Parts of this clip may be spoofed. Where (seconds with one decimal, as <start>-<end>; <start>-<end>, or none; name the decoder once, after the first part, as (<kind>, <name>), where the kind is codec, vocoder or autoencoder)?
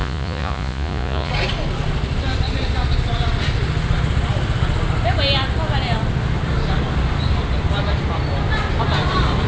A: 0.0-1.3 (vocoder, Vocos)